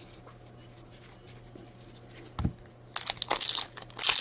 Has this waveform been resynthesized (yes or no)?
no